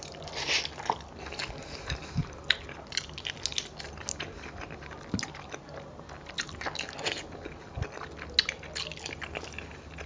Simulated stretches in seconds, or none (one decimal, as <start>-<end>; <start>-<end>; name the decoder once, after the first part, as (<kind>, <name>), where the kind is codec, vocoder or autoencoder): none